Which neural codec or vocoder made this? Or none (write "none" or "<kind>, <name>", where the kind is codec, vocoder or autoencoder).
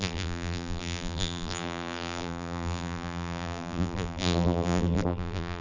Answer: vocoder, BigVGAN v2